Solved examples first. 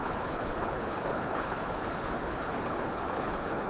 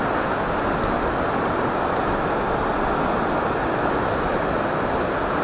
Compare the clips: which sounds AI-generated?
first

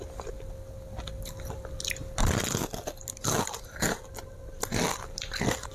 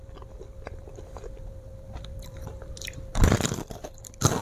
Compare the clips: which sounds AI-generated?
second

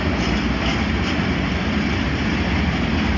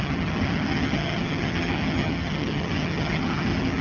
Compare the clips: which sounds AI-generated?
second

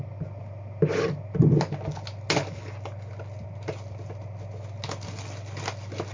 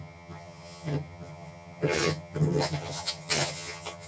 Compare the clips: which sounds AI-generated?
second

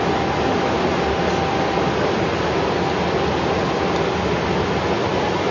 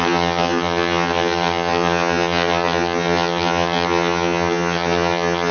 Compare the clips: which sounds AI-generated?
second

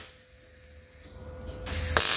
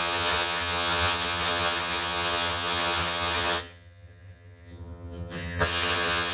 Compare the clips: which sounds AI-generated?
second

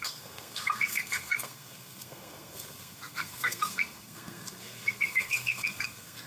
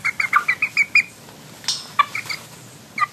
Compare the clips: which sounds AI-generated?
first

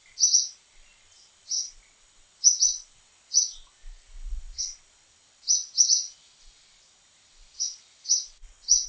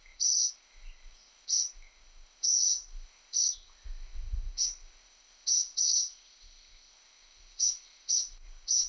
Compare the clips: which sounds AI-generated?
second